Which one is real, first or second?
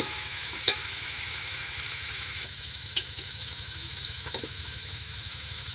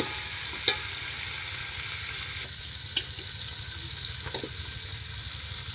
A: second